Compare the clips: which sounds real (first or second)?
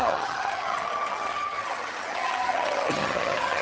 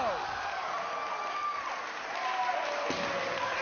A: second